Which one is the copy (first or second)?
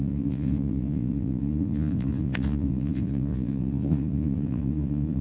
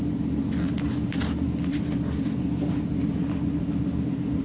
first